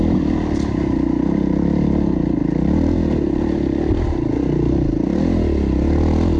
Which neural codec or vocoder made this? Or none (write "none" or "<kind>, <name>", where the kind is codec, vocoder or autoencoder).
none